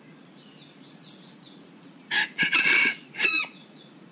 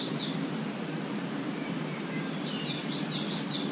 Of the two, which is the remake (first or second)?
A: first